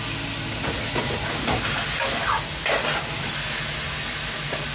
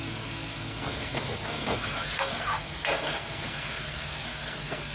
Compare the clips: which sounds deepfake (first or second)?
second